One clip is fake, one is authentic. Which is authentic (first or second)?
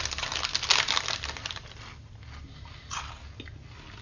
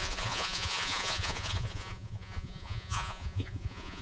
first